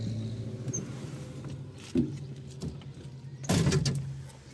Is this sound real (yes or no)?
yes